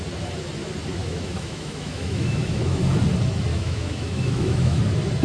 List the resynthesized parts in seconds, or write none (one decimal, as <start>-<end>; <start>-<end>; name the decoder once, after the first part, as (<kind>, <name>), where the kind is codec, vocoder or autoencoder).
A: 1.0-2.8 (autoencoder, DAC-VAE); 3.5-4.8